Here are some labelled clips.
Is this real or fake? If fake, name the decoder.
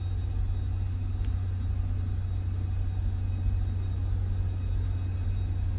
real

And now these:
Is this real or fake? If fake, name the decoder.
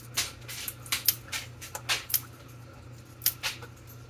real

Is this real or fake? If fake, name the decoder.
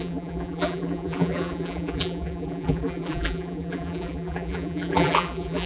fake, vocoder, BigVGAN v2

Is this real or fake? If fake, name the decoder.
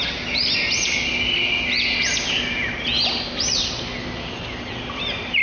real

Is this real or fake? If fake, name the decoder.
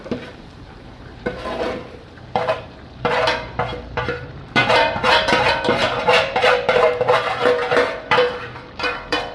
fake, vocoder, BigVGAN v2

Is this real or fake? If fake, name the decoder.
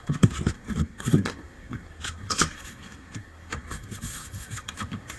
fake, codec, SNAC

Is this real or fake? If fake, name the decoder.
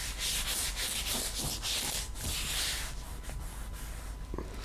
real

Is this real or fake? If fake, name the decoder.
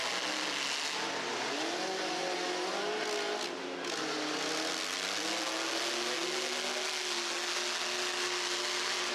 real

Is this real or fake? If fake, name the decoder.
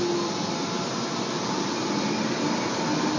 real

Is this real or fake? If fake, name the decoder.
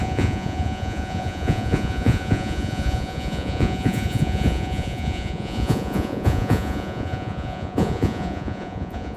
fake, vocoder, Vocos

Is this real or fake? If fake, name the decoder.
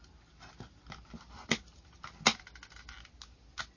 real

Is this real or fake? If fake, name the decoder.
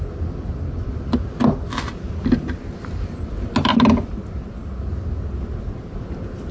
real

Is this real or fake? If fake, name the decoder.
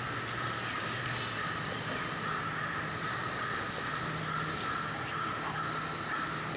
real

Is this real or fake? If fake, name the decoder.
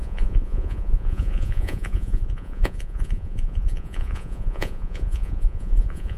fake, vocoder, Vocos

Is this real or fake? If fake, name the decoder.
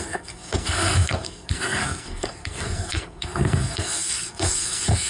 fake, codec, SNAC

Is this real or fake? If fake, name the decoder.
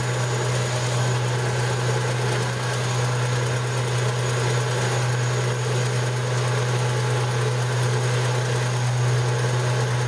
real